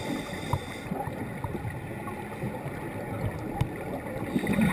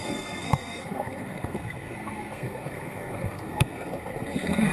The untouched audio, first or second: first